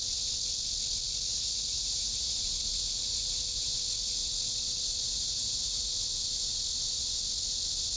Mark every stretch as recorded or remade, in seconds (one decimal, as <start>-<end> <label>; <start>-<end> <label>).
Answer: 0.0-1.3 recorded; 1.3-2.4 remade; 2.4-5.1 recorded; 5.1-5.9 remade; 5.9-8.0 recorded